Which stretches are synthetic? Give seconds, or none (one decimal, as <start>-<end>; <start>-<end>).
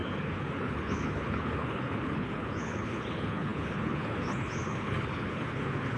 0.0-6.0